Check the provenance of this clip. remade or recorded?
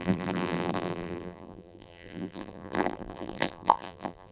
remade